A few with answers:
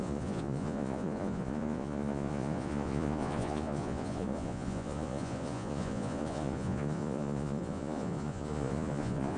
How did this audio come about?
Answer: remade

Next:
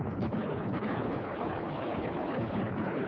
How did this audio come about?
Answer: remade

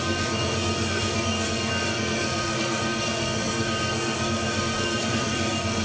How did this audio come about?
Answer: remade